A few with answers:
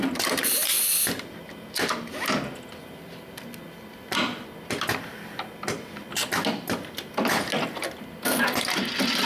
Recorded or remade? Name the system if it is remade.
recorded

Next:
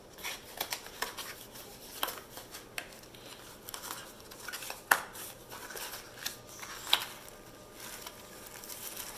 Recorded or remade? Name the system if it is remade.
recorded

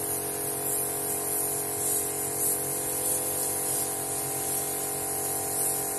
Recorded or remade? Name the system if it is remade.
recorded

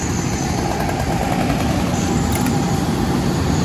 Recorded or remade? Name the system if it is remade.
recorded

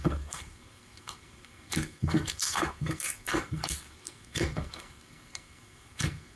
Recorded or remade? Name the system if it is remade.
remade, codec, SNAC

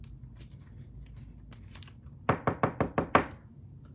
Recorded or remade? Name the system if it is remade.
recorded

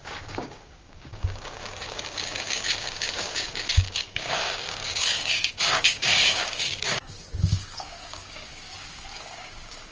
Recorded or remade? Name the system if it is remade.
remade, codec, DAC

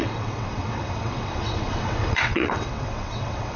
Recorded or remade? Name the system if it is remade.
remade, vocoder, WaveNeXt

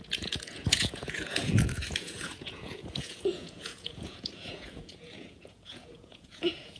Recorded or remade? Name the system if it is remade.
remade, vocoder, Vocos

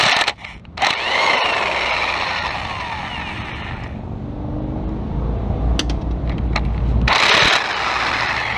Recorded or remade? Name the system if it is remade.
recorded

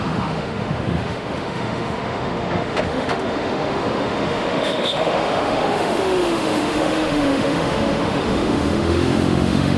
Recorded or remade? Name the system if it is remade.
remade, autoencoder, DAC-VAE